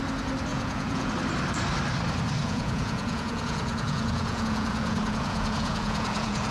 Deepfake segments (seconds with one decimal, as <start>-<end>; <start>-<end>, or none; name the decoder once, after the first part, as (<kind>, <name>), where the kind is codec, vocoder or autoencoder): 0.5-1.1 (vocoder, Vocos); 2.4-6.5